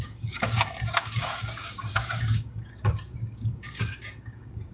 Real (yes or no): no